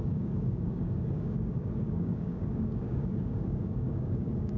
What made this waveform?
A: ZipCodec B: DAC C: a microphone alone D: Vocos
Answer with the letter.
B